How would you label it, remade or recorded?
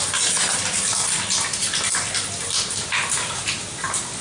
remade